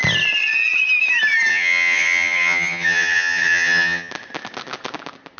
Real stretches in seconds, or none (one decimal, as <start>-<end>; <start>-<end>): 0.0-1.5; 4.1-5.4